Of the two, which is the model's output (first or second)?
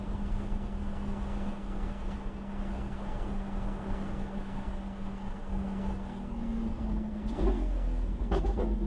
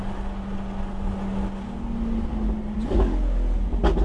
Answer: first